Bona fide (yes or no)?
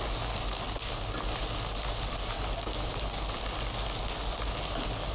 yes